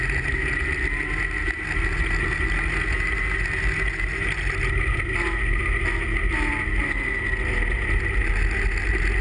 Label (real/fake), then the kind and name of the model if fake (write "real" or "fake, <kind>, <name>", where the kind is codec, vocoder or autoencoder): real